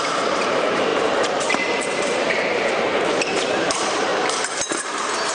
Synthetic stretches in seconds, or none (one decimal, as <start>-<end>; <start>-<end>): 0.0-4.1; 4.8-5.3

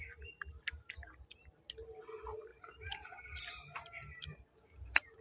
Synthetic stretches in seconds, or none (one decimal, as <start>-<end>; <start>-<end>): 2.5-5.2

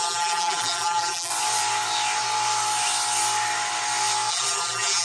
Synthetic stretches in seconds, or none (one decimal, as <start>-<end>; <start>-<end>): 0.0-1.3; 4.3-5.0

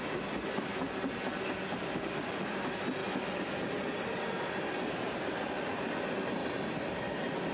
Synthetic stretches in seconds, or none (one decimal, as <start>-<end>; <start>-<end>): none

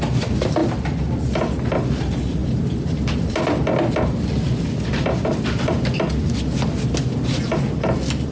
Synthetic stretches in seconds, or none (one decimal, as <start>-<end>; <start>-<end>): 2.4-5.0

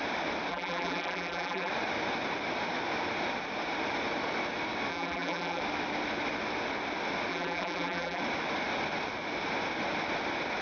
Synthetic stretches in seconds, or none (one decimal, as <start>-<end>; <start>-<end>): 0.5-1.7; 4.9-5.6; 7.3-8.2

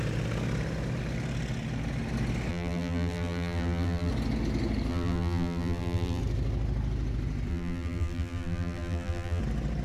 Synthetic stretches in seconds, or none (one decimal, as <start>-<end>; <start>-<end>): 2.5-4.1; 4.9-6.2; 7.5-9.4